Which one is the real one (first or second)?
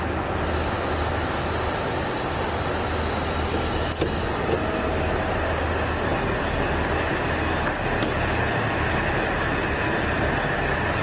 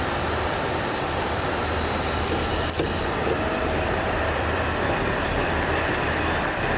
first